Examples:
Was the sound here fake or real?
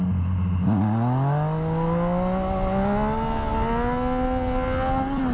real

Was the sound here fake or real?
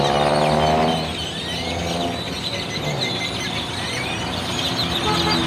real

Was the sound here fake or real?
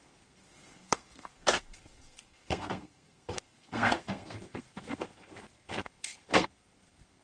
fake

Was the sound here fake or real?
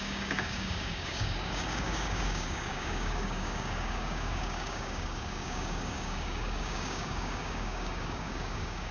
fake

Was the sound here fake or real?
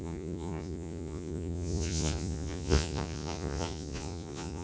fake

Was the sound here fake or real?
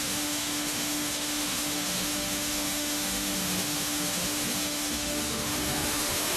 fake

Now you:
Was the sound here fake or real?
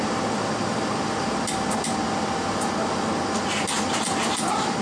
real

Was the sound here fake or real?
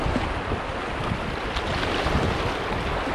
real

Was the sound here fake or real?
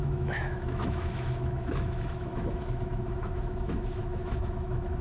fake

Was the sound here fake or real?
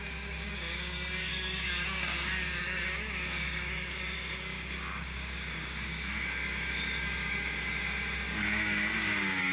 fake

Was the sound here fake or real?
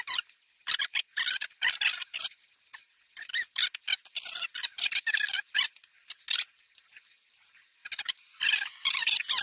real